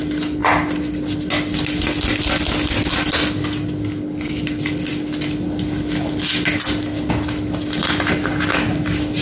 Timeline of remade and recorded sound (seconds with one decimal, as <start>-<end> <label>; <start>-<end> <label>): 0.0-9.2 recorded